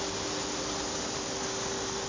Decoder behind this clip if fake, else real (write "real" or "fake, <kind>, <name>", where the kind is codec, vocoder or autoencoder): real